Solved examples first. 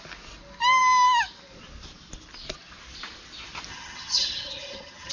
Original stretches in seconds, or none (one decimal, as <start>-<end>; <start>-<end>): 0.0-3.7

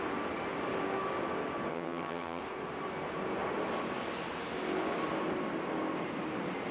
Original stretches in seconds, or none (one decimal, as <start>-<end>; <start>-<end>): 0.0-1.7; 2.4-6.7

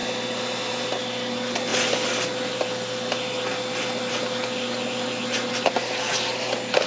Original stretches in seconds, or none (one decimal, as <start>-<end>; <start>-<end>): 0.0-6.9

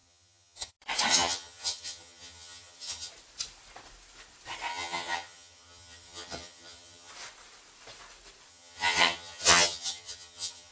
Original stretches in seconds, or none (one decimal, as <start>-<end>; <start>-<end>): 0.7-1.1; 3.1-4.7; 7.1-8.5

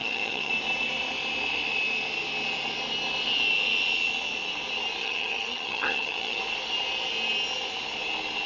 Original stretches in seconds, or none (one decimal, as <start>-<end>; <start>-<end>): 0.5-5.0; 6.4-8.5